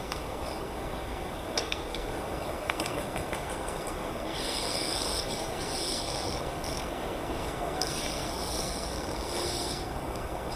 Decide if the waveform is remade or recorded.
remade